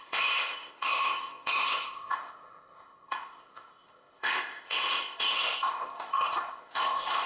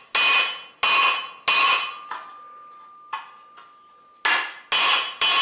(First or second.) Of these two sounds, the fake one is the first